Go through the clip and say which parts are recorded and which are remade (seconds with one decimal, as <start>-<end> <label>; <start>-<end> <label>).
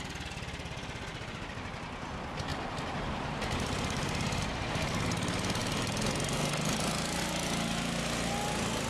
0.0-2.5 recorded; 2.5-4.4 remade; 4.4-8.9 recorded